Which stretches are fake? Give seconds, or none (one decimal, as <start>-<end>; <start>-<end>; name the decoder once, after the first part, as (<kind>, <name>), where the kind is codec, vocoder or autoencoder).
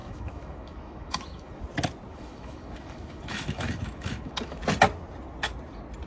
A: 0.0-1.6 (autoencoder, DAC-VAE); 2.1-4.6